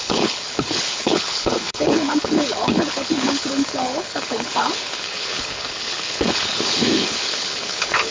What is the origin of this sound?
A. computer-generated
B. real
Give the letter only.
A